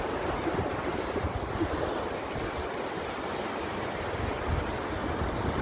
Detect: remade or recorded recorded